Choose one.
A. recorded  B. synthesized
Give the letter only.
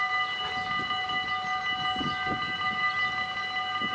A